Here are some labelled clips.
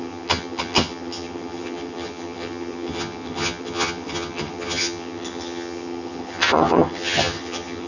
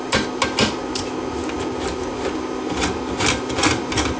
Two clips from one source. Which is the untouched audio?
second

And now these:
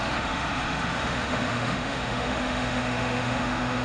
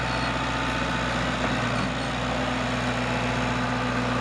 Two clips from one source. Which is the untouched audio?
second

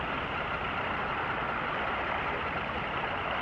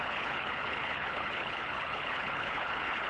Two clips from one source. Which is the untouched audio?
first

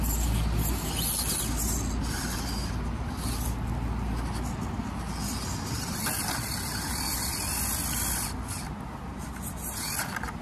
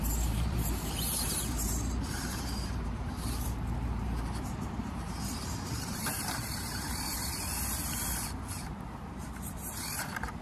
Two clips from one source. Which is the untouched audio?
first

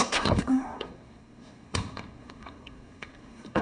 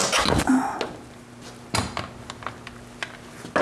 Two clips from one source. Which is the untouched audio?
second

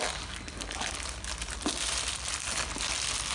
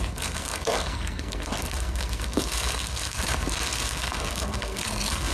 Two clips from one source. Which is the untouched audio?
first